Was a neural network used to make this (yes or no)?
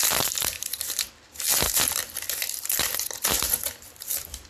yes